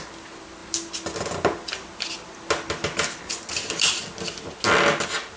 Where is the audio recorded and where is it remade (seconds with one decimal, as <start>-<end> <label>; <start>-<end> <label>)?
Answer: 0.0-5.4 recorded